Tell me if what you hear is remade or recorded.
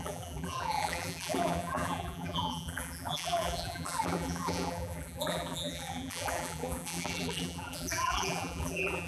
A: remade